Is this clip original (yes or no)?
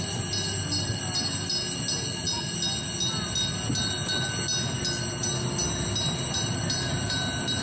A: yes